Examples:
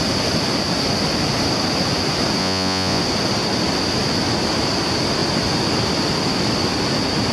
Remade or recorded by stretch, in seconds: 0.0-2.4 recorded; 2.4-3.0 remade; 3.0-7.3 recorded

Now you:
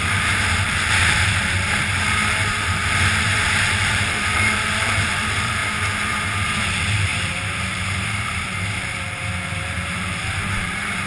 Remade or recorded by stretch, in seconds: 0.0-5.6 remade; 5.6-6.6 recorded; 6.6-11.1 remade

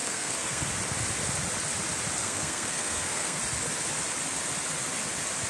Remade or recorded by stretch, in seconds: 0.0-0.6 remade; 0.6-2.2 recorded; 2.2-3.4 remade; 3.4-5.5 recorded

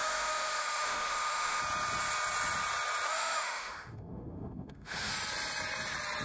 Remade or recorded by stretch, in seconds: 0.0-1.6 remade; 1.6-3.1 recorded; 3.1-5.1 remade; 5.1-6.2 recorded

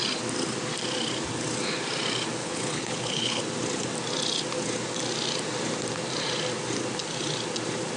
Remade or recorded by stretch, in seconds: 0.0-2.4 recorded; 2.4-3.4 remade; 3.4-8.0 recorded